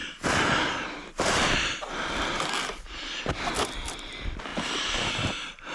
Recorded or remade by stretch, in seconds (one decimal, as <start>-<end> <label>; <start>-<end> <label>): 0.0-5.7 recorded